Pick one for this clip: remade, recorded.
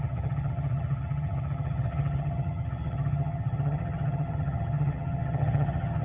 remade